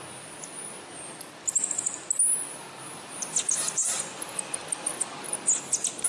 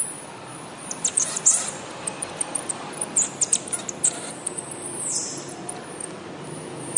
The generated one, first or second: second